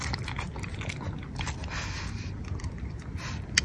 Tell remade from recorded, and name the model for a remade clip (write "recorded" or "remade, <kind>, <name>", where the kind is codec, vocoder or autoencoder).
recorded